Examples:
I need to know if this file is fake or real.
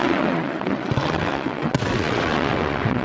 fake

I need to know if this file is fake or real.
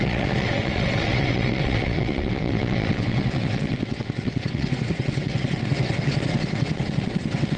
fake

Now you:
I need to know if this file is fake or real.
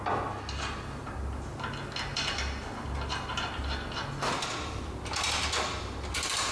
real